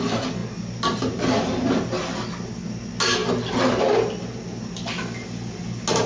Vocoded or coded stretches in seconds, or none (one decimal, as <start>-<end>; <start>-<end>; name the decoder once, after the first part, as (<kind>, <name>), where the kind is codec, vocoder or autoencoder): none